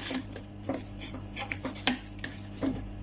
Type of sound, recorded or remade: remade